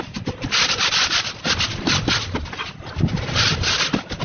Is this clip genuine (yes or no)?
yes